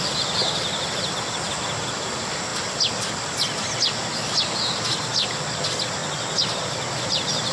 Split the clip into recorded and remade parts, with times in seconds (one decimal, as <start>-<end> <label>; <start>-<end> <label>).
0.0-7.5 recorded